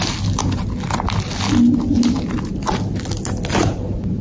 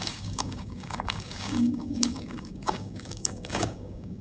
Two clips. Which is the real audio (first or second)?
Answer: first